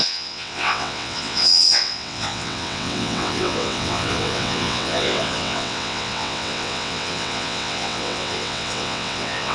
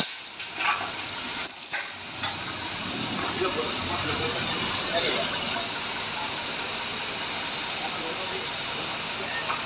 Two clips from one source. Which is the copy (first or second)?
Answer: first